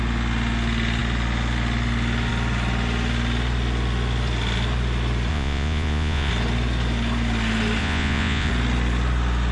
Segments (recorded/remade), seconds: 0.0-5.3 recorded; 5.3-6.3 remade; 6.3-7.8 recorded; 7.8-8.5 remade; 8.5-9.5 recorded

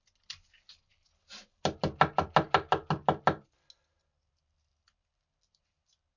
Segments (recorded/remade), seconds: 0.0-6.2 recorded

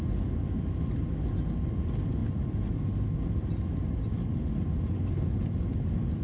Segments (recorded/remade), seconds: 0.0-6.2 recorded

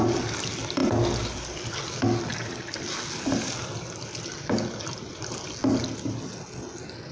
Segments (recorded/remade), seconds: 0.0-7.1 recorded

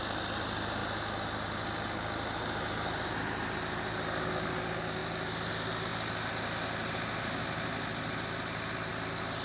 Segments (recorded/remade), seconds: 0.0-9.4 recorded

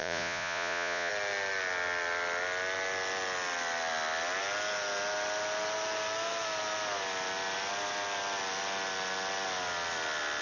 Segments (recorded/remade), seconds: 0.0-1.1 remade; 1.1-10.4 recorded

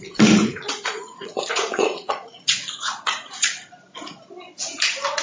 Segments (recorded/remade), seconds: 0.0-0.4 recorded; 0.4-3.5 remade; 3.5-5.2 recorded